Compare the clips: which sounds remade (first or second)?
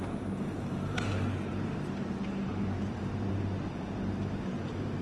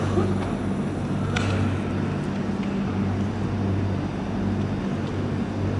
first